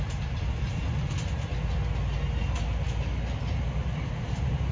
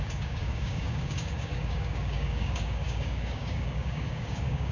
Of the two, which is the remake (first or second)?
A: second